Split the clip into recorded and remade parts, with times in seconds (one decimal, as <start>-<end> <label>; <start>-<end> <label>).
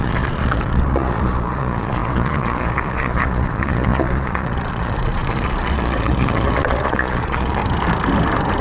0.0-7.6 remade; 7.6-8.6 recorded